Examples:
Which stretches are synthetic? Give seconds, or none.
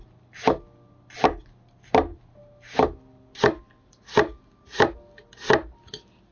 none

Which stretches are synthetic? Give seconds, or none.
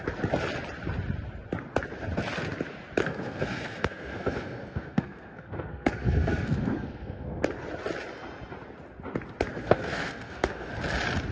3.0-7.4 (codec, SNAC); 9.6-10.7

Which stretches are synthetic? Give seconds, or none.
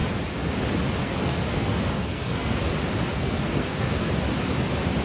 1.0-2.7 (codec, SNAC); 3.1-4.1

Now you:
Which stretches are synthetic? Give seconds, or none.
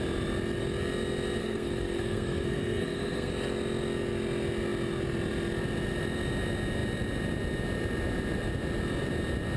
1.4-3.3 (codec, SNAC)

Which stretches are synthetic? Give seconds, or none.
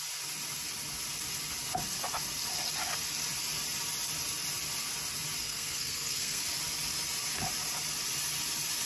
5.4-6.4 (codec, SNAC)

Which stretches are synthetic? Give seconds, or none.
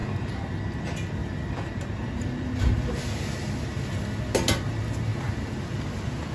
0.0-0.6 (vocoder, BigVGAN v2); 1.2-3.0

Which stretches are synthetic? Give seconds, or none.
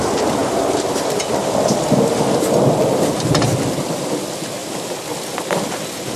none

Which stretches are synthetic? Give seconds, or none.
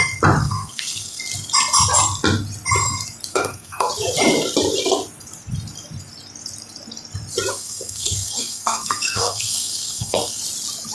0.4-1.2 (codec, SNAC); 3.3-3.9; 7.5-10.4